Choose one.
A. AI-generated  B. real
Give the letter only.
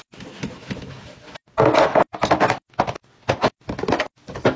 B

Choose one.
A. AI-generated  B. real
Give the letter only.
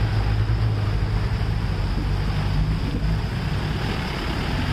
B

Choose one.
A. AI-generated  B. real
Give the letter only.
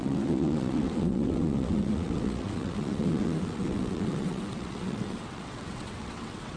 A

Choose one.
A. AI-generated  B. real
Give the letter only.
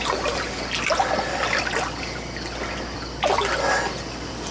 B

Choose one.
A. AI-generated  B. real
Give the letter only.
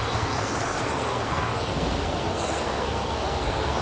A